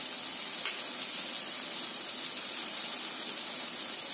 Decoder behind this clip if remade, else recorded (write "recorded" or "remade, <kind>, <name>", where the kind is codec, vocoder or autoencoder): recorded